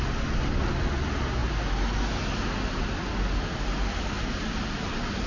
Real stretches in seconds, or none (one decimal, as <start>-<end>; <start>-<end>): 0.0-5.3